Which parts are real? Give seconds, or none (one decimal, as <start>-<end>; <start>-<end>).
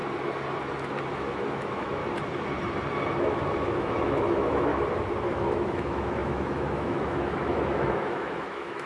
0.0-1.1; 2.0-3.1; 4.7-5.3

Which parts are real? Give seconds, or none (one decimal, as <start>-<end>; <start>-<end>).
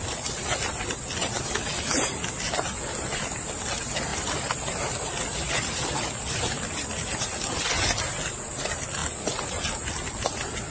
0.0-10.7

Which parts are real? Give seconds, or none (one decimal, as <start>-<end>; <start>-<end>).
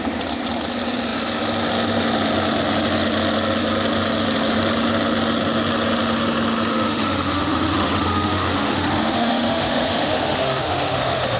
0.0-6.7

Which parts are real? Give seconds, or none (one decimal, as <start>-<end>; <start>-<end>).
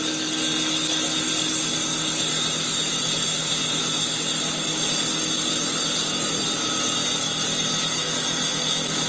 0.0-9.1